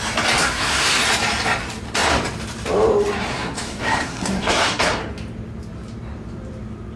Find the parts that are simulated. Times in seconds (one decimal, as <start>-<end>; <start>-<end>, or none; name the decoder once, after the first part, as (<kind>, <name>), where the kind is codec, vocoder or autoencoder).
0.4-1.0 (codec, SNAC); 3.3-5.0